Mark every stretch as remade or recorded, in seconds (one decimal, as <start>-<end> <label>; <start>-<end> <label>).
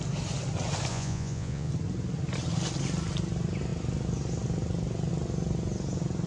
0.0-0.9 recorded; 0.9-1.7 remade; 1.7-6.3 recorded